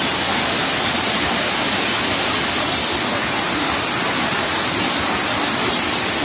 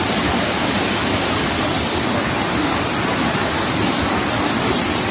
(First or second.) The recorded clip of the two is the first